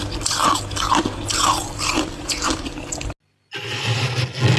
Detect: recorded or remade recorded